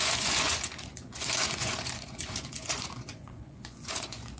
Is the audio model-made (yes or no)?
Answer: yes